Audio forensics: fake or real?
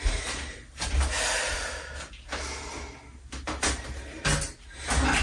real